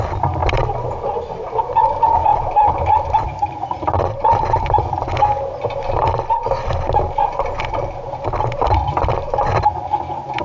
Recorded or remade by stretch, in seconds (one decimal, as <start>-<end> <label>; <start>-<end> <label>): 0.0-0.4 recorded; 0.4-1.1 remade; 1.1-2.3 recorded; 2.3-4.8 remade; 4.8-10.4 recorded